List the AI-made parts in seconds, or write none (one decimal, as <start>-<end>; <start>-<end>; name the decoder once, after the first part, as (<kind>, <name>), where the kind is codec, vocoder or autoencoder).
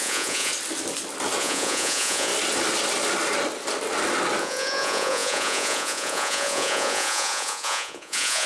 0.0-0.5 (vocoder, Vocos); 1.4-2.3; 4.4-8.5